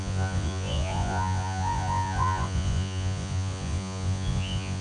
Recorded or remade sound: remade